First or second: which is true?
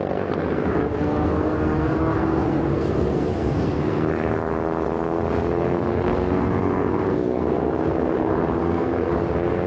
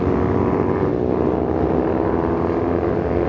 second